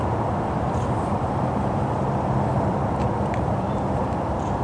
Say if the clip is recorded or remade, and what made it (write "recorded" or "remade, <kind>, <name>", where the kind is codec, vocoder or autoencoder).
remade, vocoder, BigVGAN v2